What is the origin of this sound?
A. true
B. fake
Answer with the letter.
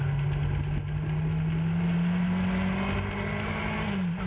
A